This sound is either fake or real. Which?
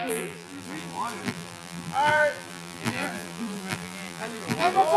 fake